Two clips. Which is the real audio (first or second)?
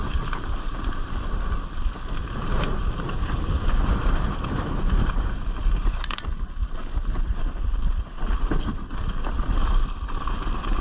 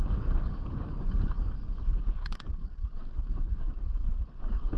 first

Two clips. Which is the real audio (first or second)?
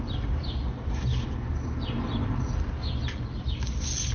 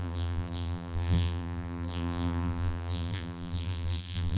first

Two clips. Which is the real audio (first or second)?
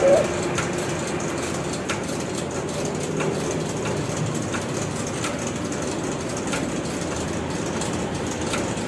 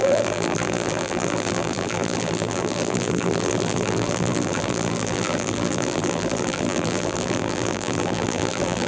first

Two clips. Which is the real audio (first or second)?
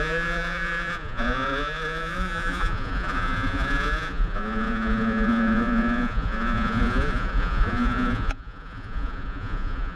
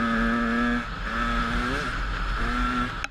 second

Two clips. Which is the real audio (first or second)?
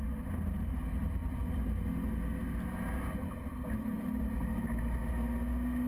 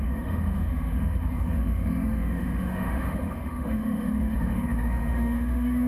first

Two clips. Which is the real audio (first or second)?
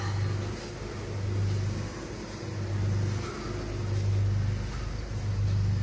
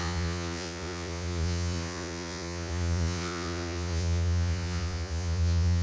first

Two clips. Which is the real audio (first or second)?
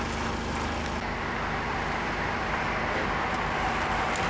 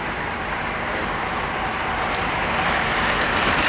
first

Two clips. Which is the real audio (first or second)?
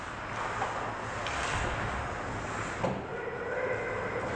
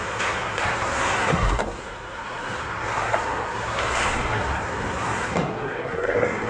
first